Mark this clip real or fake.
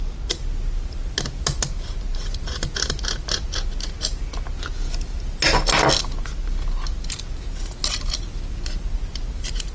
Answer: real